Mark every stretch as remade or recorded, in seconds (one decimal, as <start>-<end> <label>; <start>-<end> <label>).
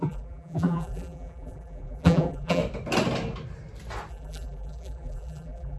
0.0-2.6 remade; 2.6-4.1 recorded; 4.1-5.8 remade